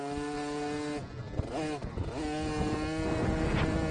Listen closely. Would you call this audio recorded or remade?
recorded